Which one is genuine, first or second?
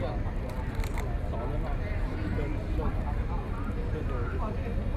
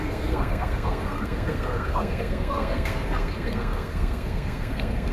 first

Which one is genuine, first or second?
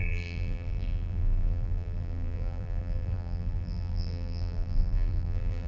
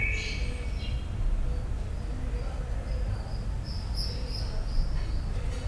second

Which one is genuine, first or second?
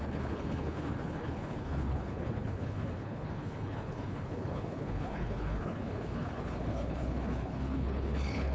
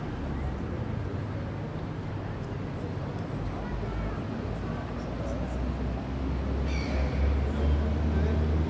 second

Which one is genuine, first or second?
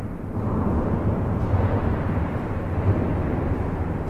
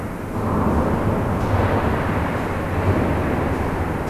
second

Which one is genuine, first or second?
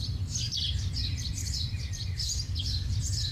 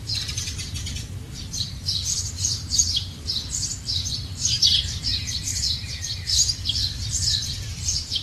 first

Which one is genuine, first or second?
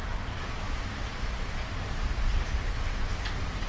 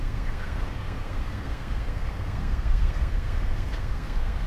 first